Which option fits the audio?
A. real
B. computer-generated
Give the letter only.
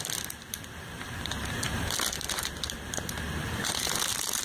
B